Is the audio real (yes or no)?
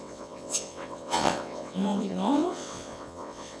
no